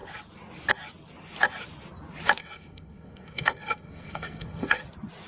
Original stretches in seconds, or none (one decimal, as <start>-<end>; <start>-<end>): 0.0-2.4; 4.8-5.3

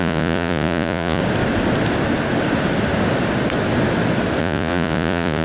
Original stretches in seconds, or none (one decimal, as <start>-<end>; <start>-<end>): 1.2-4.4

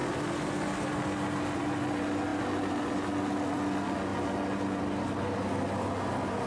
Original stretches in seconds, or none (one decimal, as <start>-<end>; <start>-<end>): 0.0-6.5

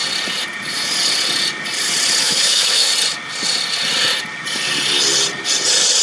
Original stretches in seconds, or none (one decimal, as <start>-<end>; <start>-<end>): 0.0-2.2; 2.9-6.0

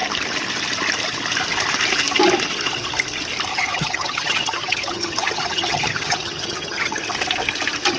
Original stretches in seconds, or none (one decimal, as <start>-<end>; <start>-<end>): 0.0-3.5; 7.0-8.0

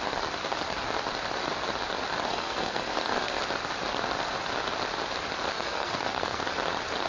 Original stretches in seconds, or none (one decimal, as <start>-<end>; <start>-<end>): 0.0-2.3; 3.4-5.5; 6.4-7.1

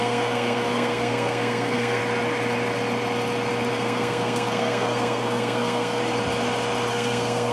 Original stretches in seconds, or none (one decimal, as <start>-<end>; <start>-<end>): 2.0-3.7; 6.0-6.9